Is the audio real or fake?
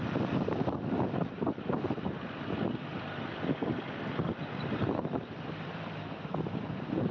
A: fake